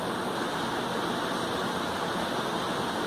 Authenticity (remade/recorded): recorded